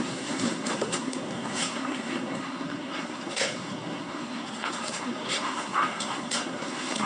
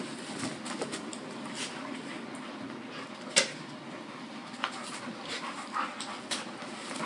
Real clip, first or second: second